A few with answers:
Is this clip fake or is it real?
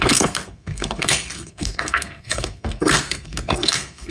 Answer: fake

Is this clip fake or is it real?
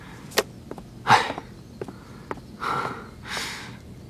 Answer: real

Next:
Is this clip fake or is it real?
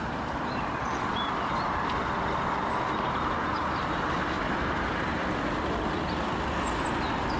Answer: real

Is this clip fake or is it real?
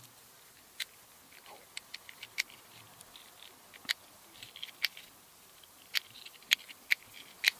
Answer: real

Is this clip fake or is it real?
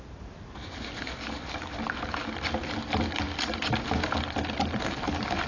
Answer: real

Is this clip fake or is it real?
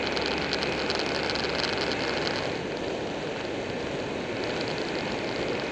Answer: real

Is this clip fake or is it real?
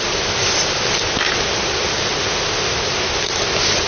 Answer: real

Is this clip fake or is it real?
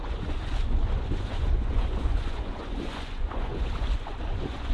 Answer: fake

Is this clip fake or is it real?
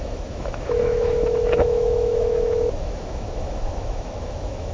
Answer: fake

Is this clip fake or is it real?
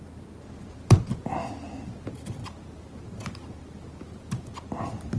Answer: real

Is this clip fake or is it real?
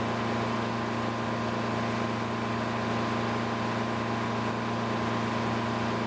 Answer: real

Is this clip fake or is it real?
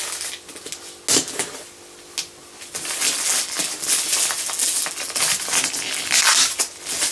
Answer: real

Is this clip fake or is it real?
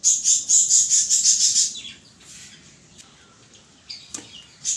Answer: real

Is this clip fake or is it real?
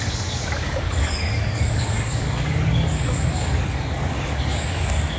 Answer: fake